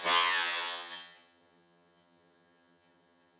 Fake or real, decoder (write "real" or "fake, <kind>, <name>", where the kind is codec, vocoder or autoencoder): fake, vocoder, HiFi-GAN